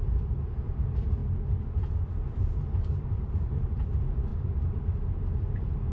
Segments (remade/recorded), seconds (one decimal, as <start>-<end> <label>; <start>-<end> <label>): 0.0-1.2 remade; 1.2-2.3 recorded; 2.3-5.9 remade